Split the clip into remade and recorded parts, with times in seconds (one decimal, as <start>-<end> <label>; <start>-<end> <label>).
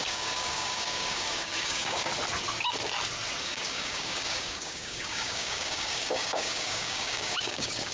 0.0-2.1 remade; 2.1-3.4 recorded; 3.4-7.9 remade